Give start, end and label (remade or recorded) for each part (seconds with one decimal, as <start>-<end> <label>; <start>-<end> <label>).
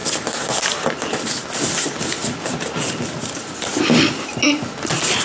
0.0-5.2 recorded